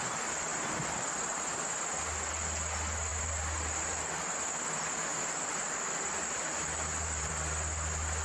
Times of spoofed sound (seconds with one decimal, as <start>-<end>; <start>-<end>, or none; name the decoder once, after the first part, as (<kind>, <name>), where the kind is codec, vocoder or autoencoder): 3.1-4.1 (vocoder, BigVGAN v2); 5.1-7.3